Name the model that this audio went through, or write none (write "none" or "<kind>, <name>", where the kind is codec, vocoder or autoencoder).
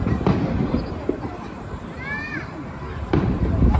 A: vocoder, BigVGAN v2